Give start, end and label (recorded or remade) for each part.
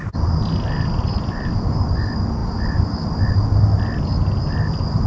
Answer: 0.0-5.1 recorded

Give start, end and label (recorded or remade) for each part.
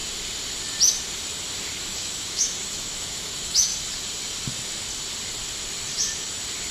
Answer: 0.0-1.8 recorded; 1.8-3.7 remade; 3.7-6.7 recorded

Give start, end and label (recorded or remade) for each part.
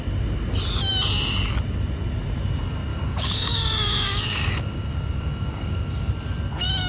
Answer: 0.0-2.9 recorded; 2.9-6.1 remade; 6.1-6.9 recorded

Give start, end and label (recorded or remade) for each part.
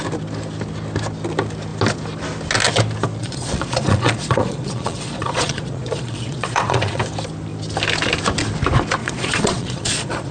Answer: 0.0-3.2 recorded; 3.2-7.0 remade; 7.0-9.0 recorded; 9.0-10.3 remade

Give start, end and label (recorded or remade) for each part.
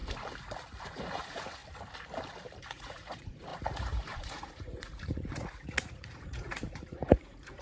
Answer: 0.0-0.8 recorded; 0.8-1.6 remade; 1.6-2.6 recorded; 2.6-7.6 remade